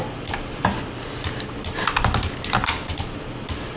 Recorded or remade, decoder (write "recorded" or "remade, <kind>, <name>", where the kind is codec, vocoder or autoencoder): recorded